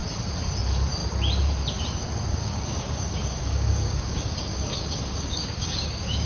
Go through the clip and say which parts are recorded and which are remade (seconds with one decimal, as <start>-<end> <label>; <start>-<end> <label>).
0.0-2.3 recorded; 2.3-6.3 remade